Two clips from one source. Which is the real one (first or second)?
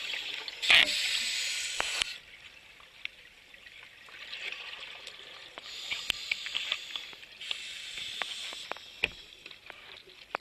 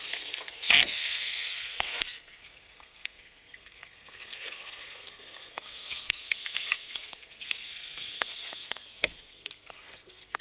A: first